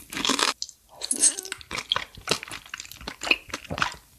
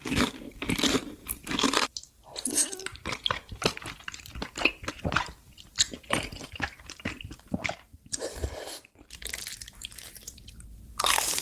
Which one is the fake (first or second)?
second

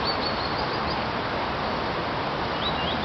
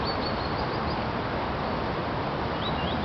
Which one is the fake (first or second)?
second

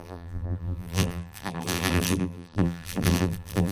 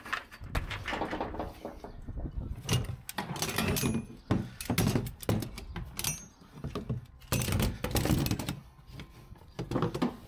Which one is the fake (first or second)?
first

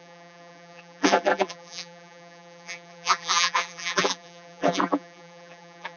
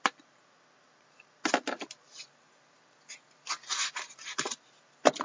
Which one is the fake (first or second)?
first